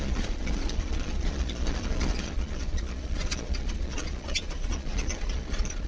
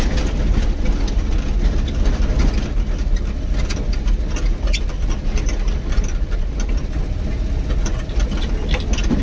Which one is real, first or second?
second